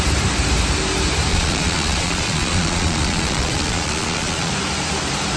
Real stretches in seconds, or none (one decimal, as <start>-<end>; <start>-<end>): 0.0-1.3; 4.5-5.4